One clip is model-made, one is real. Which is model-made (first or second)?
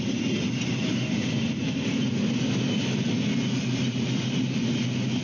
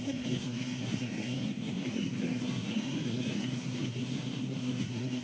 second